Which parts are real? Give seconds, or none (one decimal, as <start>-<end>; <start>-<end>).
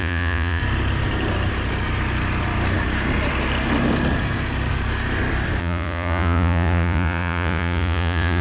0.6-5.6